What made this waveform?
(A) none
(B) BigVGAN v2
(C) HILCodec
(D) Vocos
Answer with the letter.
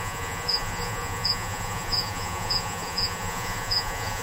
D